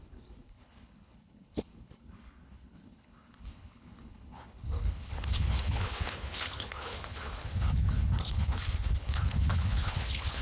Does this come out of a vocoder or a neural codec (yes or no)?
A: yes